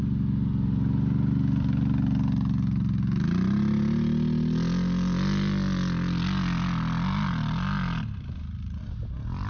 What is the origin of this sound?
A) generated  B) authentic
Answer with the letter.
B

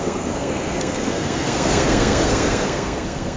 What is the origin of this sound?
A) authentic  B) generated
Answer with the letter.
B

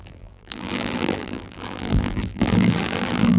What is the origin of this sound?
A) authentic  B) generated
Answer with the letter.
B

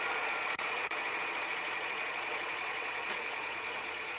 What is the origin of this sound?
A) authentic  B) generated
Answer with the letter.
B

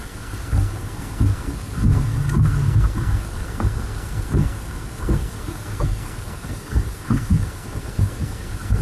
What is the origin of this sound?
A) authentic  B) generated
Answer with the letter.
B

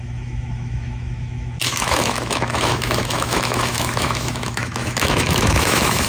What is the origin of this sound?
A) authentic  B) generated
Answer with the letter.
B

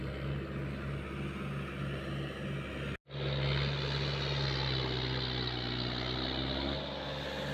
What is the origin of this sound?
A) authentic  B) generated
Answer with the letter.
A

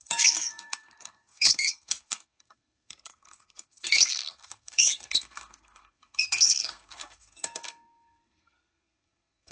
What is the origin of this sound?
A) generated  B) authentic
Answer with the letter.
A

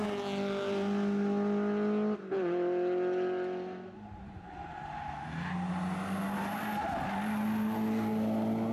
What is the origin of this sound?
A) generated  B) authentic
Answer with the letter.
B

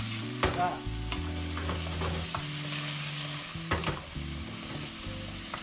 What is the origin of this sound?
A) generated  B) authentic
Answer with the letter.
B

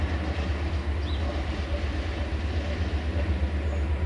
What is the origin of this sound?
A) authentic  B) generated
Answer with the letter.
A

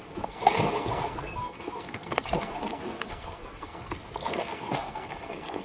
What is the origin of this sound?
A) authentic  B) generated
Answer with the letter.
B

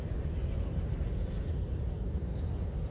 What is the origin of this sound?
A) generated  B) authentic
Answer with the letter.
B